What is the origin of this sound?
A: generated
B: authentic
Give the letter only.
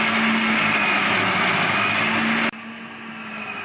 B